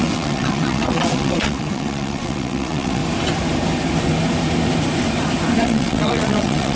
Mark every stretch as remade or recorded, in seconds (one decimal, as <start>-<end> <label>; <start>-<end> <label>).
0.0-3.0 remade; 3.0-5.6 recorded; 5.6-6.8 remade